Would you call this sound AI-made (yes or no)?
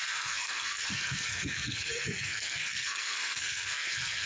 yes